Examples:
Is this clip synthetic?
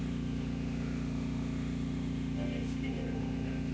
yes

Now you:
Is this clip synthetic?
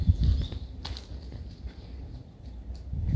no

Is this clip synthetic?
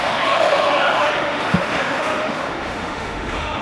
yes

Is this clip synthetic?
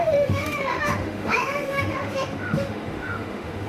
yes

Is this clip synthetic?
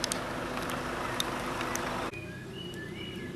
no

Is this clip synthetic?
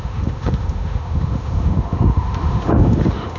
yes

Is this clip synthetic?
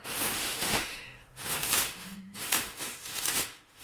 yes